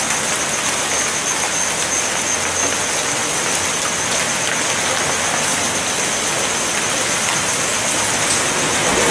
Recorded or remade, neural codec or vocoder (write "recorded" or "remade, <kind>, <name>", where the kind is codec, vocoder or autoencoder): recorded